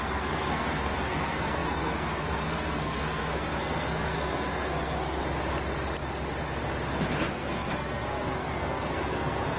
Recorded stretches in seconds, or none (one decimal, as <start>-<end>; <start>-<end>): 5.2-7.3